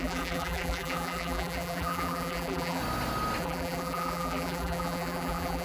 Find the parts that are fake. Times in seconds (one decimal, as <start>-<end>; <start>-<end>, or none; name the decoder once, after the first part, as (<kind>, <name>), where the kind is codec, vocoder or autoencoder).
0.0-2.8 (vocoder, BigVGAN v2); 3.4-5.6